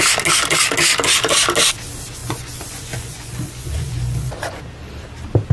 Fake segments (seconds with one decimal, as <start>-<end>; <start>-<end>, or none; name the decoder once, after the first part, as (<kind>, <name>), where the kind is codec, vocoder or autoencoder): 2.2-4.6 (vocoder, Vocos)